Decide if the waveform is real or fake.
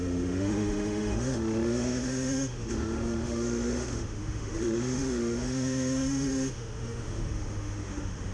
fake